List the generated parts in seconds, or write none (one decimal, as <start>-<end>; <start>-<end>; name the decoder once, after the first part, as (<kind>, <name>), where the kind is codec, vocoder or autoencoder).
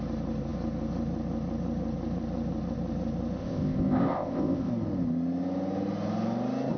3.4-4.7 (codec, ZipCodec)